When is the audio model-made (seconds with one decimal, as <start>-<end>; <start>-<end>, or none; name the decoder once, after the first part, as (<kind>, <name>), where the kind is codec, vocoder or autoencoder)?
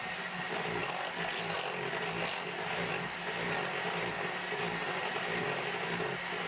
none